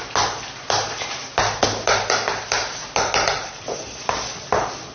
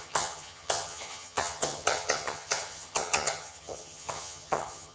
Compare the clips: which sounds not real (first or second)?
second